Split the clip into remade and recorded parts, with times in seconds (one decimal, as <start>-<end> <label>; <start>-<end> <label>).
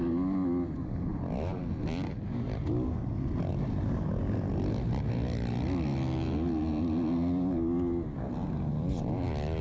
0.0-9.6 recorded